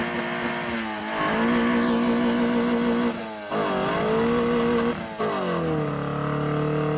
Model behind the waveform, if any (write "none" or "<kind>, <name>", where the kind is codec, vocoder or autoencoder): none